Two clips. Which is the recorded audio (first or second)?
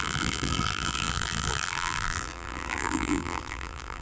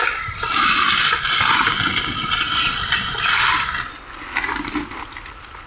second